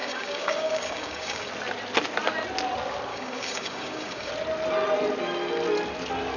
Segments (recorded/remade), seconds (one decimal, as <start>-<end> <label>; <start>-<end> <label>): 0.0-1.5 remade; 1.5-3.1 recorded; 3.1-4.3 remade; 4.3-6.4 recorded